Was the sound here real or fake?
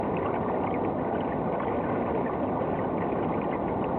real